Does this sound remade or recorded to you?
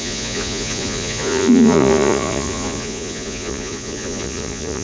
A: remade